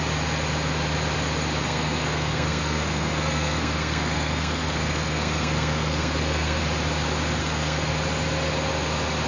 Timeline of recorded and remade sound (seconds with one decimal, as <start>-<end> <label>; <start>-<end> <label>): 0.0-1.6 recorded; 1.6-6.6 remade; 6.6-7.4 recorded; 7.4-7.9 remade; 7.9-9.3 recorded